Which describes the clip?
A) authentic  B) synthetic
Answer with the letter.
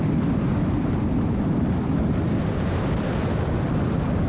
A